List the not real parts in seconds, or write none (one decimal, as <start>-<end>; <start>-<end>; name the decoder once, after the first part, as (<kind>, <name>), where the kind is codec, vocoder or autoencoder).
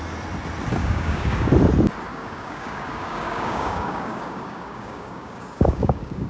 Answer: 0.8-1.5 (codec, DAC); 2.1-6.3